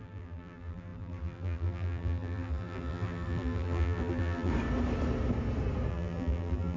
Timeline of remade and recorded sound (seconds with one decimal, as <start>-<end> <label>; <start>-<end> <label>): 0.0-4.5 remade; 4.5-5.9 recorded; 5.9-6.8 remade